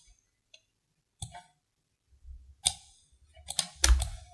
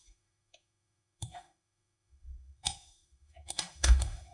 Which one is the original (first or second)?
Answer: first